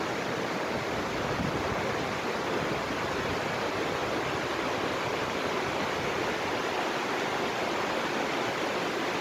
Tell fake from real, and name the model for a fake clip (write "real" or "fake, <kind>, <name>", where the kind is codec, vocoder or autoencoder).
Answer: real